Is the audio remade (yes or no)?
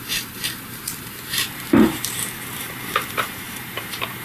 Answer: yes